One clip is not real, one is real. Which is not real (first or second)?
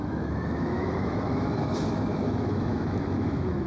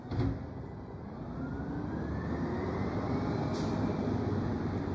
first